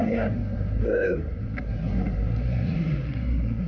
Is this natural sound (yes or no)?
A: no